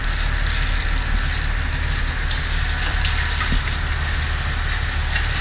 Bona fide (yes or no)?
yes